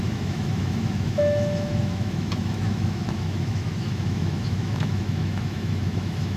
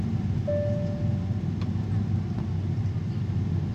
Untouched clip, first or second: second